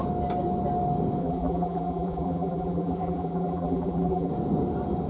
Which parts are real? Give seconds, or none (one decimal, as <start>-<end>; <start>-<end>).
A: 0.0-1.2; 4.3-5.1